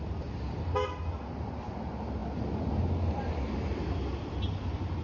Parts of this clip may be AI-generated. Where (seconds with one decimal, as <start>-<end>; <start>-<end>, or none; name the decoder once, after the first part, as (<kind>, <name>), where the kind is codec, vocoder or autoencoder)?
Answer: none